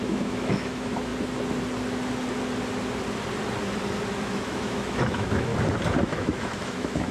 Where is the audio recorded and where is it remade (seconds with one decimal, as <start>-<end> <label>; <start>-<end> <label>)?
0.0-1.1 remade; 1.1-4.2 recorded; 4.2-5.5 remade; 5.5-6.0 recorded; 6.0-7.1 remade